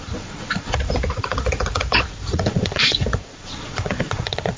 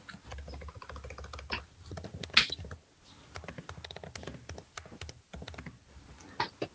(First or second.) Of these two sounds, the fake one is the first